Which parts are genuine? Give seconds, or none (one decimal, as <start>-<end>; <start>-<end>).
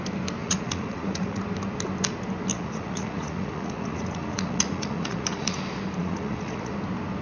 0.0-0.4; 1.4-2.5; 5.6-6.0; 6.7-7.2